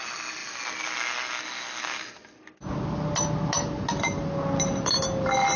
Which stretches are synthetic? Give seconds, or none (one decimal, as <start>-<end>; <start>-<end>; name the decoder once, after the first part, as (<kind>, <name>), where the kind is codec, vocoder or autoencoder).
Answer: none